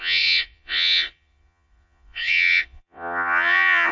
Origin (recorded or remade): remade